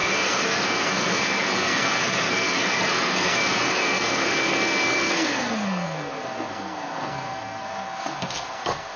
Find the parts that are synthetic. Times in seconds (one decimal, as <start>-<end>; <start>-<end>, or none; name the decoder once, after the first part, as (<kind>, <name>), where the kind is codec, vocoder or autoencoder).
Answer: 0.0-9.0 (codec, SNAC)